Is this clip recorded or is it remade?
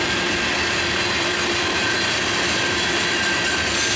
recorded